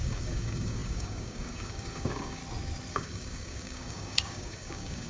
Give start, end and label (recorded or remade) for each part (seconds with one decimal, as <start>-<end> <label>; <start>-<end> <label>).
0.0-2.4 remade; 2.4-2.9 recorded; 2.9-5.1 remade